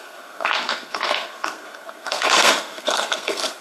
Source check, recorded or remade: remade